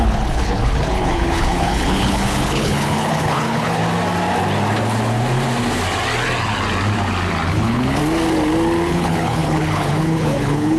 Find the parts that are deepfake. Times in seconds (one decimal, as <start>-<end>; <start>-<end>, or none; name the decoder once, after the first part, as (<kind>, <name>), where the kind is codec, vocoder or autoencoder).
0.0-3.8 (codec, HILCodec); 7.5-8.0; 8.9-10.8